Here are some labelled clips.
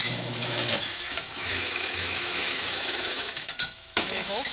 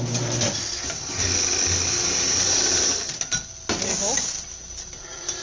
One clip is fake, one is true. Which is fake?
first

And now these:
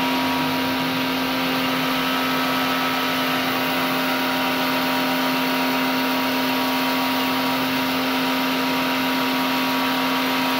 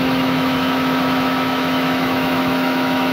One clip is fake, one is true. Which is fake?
second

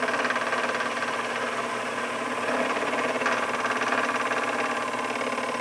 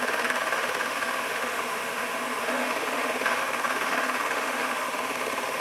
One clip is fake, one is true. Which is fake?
second